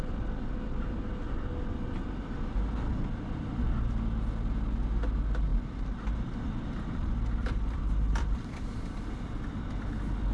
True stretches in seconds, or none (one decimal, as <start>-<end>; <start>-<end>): 0.0-2.9; 3.9-5.5; 9.2-10.3

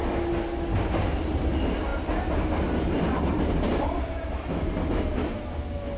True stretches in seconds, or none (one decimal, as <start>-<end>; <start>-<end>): 0.0-6.0

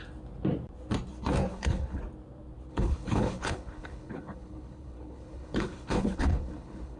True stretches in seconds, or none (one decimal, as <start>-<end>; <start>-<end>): 0.0-1.5; 2.0-2.7

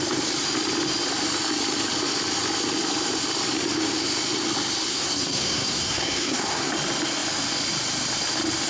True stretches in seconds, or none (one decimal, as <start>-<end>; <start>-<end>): 0.0-4.9; 6.7-8.7